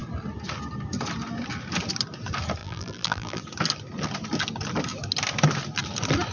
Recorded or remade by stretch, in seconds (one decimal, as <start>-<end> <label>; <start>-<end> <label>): 0.0-2.6 recorded; 2.6-3.4 remade; 3.4-6.3 recorded